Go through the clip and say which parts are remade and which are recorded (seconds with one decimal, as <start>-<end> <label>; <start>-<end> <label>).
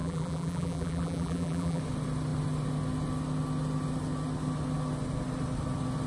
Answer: 0.0-1.8 remade; 1.8-6.1 recorded